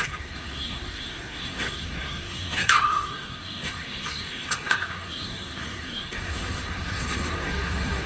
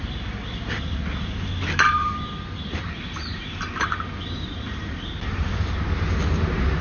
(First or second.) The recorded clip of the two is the second